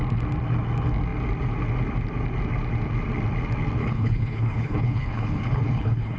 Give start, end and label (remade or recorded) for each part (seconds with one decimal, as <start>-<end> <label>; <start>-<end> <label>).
0.0-3.8 recorded; 3.8-6.2 remade